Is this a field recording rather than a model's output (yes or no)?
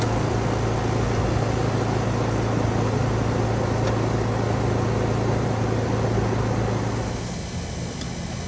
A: yes